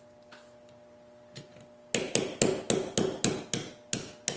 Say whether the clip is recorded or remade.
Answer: recorded